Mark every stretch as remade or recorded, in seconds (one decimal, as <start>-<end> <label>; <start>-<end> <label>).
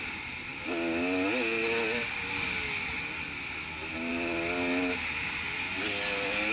0.0-6.5 recorded